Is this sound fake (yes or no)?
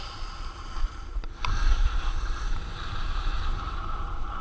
yes